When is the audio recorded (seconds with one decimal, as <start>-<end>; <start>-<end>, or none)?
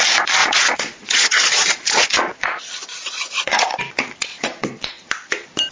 0.0-0.4; 3.8-4.3; 5.1-5.7